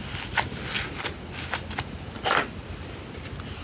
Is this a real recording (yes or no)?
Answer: yes